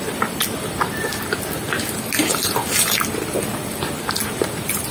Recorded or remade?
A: remade